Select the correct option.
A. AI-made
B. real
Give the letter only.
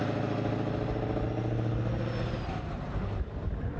B